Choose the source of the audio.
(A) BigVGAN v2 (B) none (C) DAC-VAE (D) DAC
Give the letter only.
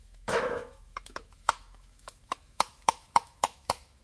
C